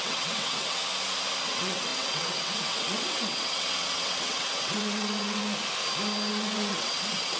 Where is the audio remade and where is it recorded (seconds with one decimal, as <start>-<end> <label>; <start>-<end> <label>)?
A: 0.0-0.8 remade; 0.8-1.4 recorded; 1.4-5.4 remade; 5.4-6.3 recorded; 6.3-7.4 remade